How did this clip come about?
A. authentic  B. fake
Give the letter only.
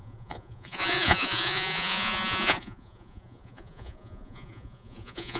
B